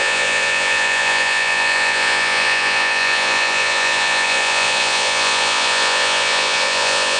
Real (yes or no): no